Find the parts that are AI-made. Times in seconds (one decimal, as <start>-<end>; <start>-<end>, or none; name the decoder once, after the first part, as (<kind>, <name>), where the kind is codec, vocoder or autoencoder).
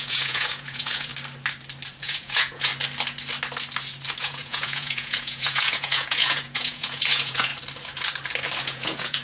0.0-1.1 (vocoder, Vocos); 2.0-2.7; 4.2-7.5; 8.6-9.2